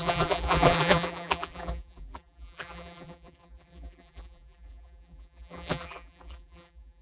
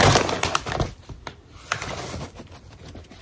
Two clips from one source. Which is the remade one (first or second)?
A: first